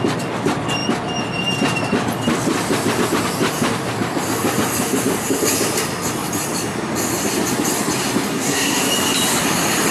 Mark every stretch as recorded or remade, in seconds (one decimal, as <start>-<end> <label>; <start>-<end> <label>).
0.0-8.3 recorded; 8.3-8.9 remade; 8.9-9.9 recorded